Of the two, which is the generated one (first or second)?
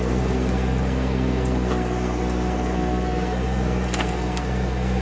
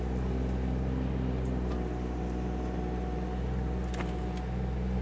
first